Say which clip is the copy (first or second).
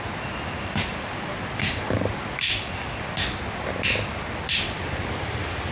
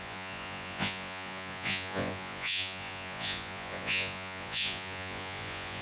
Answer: second